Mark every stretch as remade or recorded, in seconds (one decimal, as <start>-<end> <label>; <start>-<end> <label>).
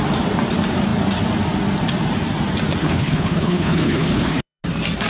0.0-2.8 recorded; 2.8-4.6 remade; 4.6-5.1 recorded